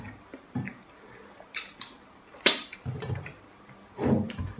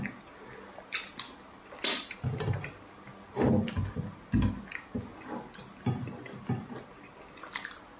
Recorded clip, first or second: second